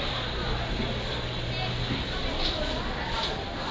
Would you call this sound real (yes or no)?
yes